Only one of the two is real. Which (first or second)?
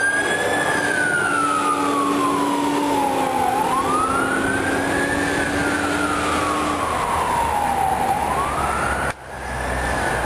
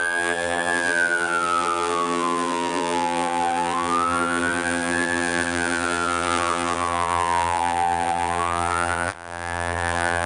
first